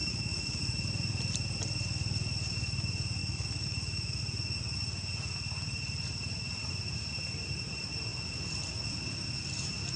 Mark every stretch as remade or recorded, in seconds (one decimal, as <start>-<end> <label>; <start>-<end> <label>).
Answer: 0.0-0.6 remade; 0.6-3.2 recorded; 3.2-4.2 remade; 4.2-10.0 recorded